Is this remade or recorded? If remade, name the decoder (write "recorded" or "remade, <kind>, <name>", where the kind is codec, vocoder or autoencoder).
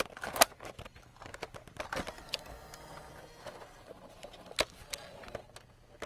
recorded